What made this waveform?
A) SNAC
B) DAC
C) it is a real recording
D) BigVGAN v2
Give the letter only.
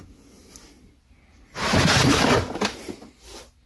C